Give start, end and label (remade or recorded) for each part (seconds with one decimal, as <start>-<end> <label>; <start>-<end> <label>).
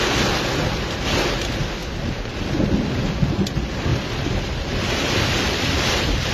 0.0-3.9 recorded; 3.9-6.3 remade